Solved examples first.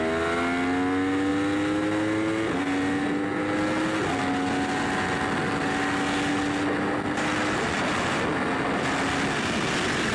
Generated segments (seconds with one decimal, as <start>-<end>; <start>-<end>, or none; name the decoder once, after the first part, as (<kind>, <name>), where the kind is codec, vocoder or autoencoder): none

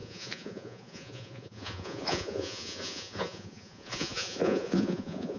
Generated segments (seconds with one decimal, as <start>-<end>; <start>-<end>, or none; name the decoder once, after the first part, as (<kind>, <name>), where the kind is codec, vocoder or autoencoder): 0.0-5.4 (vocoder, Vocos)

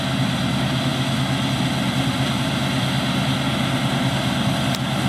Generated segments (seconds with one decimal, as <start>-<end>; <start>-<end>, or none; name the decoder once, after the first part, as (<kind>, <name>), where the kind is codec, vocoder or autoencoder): none